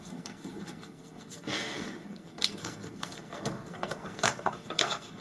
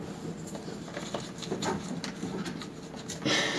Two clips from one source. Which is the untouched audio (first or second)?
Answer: second